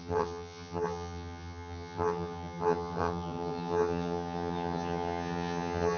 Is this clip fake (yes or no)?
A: yes